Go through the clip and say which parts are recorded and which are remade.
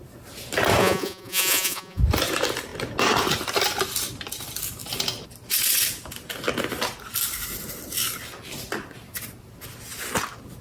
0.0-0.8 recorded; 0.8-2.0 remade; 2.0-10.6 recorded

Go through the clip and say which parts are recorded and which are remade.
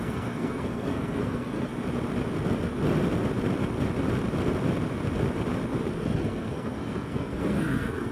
0.0-1.7 remade; 1.7-6.0 recorded; 6.0-8.1 remade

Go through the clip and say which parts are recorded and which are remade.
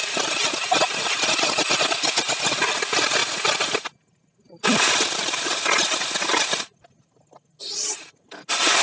0.0-8.8 recorded